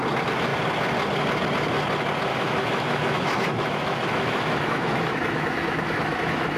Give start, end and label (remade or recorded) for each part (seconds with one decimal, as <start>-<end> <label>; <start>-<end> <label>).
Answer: 0.0-2.3 recorded; 2.3-6.6 remade